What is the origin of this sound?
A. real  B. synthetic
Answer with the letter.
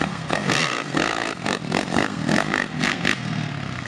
B